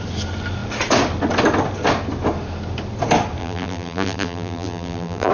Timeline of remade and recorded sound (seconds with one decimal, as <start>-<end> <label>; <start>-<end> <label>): 0.0-3.4 recorded; 3.4-5.3 remade